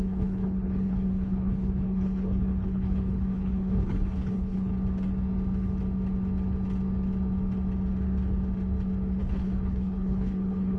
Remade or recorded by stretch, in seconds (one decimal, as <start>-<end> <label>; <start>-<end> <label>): 0.0-4.7 remade; 4.7-9.2 recorded; 9.2-10.8 remade